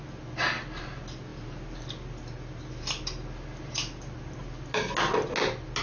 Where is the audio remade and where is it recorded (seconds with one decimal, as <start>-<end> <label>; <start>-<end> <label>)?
0.0-5.8 recorded